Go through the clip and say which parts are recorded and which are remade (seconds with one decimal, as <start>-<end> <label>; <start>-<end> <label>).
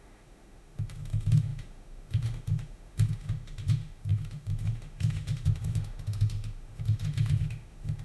0.0-8.0 remade